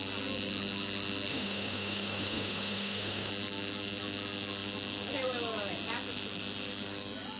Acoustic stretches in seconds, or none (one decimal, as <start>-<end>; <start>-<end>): 0.0-1.3; 3.3-7.4

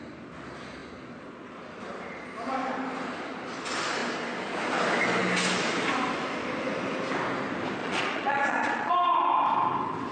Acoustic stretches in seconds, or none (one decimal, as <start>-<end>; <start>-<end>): 0.0-7.8; 8.9-10.1

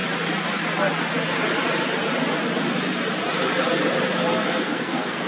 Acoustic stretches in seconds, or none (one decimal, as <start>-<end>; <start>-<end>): 0.0-4.3

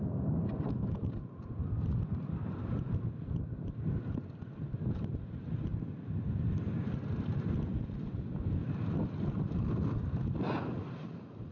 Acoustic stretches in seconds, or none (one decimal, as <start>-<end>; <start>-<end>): 0.0-2.1; 2.9-11.5